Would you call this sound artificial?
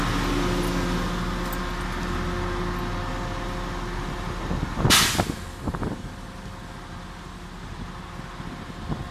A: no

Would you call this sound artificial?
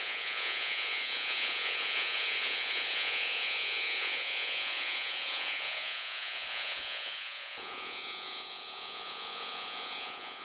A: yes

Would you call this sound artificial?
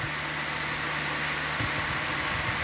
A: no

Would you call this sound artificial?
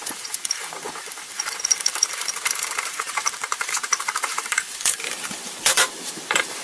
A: yes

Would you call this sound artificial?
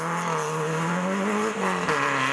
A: no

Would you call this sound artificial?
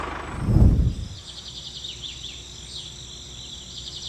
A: no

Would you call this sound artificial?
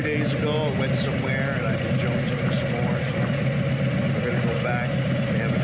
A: no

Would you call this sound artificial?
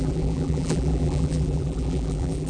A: yes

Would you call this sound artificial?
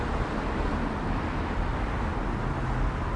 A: no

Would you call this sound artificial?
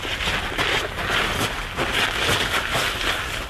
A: no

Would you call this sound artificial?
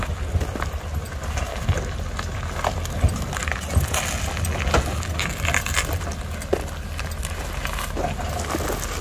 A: no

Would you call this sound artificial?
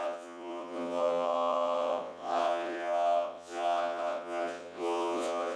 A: yes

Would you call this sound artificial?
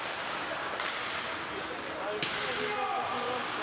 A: no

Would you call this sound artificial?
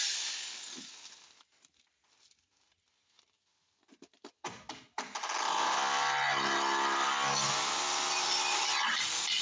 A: no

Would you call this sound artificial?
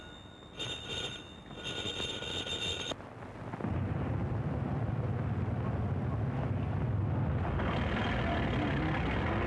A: no